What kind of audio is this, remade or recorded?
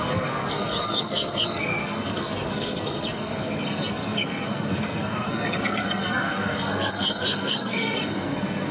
remade